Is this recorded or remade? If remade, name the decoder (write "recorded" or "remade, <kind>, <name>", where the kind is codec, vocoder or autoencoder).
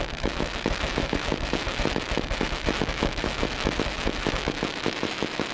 remade, autoencoder, DAC-VAE